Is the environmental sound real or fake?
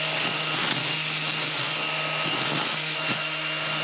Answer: real